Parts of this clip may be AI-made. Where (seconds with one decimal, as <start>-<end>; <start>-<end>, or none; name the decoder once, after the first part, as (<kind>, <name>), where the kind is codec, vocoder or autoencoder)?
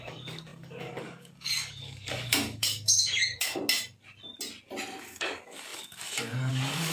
0.0-3.6 (codec, DAC); 5.0-6.9